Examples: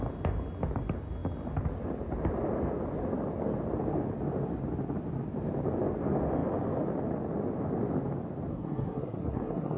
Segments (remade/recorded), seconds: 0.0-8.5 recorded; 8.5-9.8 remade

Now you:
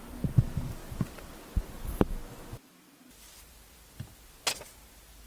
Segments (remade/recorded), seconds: 0.0-5.3 recorded

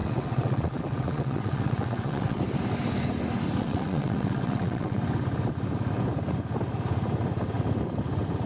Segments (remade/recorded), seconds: 0.0-2.4 remade; 2.4-3.6 recorded; 3.6-5.0 remade; 5.0-8.5 recorded

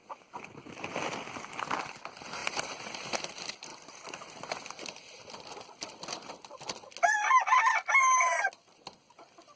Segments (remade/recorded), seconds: 0.0-2.0 remade; 2.0-2.4 recorded; 2.4-3.2 remade; 3.2-3.7 recorded; 3.7-4.5 remade; 4.5-9.6 recorded

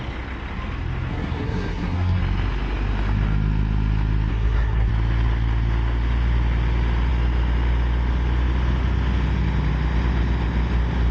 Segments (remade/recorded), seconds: 0.0-1.1 recorded; 1.1-2.2 remade; 2.2-4.3 recorded; 4.3-4.9 remade; 4.9-11.1 recorded